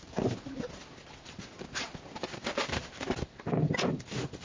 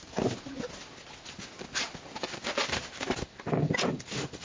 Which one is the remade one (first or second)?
first